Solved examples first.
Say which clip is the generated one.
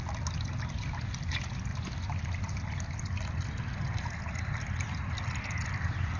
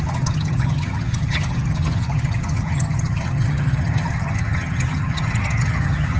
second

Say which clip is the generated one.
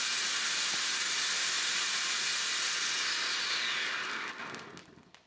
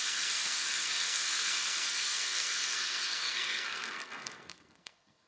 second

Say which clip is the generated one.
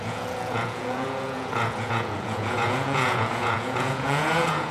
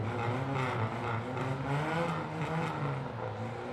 first